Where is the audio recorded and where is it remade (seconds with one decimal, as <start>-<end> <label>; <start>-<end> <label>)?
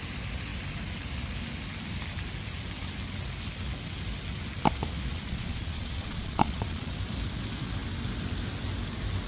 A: 0.0-5.1 recorded; 5.1-6.9 remade; 6.9-9.3 recorded